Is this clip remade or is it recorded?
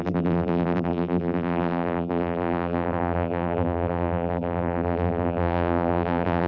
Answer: remade